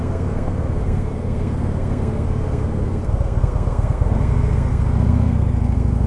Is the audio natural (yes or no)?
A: no